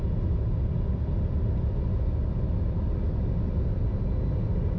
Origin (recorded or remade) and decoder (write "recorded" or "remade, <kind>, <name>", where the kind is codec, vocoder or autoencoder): recorded